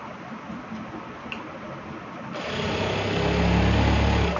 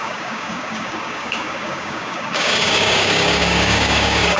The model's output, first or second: second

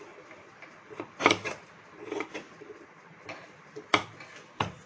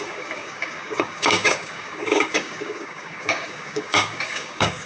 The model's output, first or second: second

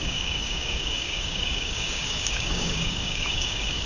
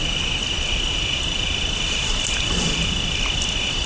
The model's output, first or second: first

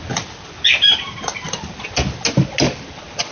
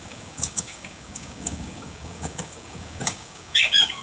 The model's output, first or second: second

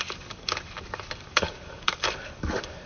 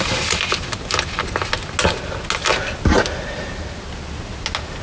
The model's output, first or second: first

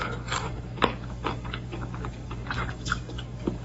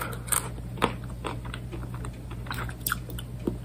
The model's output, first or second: first